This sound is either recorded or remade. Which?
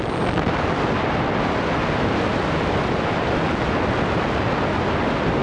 recorded